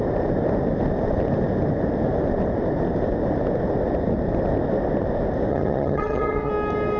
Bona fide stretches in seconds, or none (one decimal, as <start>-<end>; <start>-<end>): 0.0-5.5; 6.5-7.0